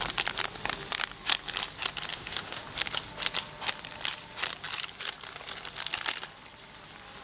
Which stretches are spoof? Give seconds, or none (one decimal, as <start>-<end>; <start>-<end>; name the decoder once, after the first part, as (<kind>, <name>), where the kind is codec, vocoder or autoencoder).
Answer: 2.1-2.6 (autoencoder, DAC-VAE)